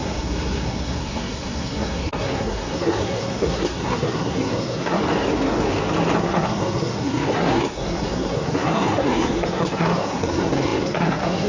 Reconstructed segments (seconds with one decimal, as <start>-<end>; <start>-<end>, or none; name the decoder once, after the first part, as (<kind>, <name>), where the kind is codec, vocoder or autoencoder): 0.0-5.0 (codec, SNAC); 6.2-11.5